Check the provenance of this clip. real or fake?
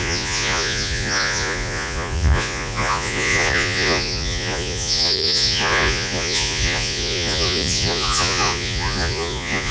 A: fake